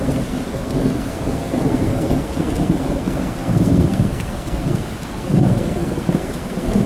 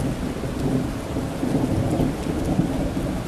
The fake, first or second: first